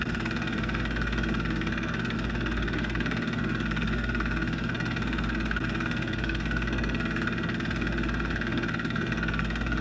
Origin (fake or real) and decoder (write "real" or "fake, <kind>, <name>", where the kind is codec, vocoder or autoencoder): fake, codec, SNAC